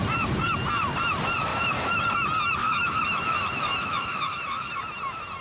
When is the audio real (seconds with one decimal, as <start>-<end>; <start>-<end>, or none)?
0.0-1.5; 2.0-2.6; 4.8-5.4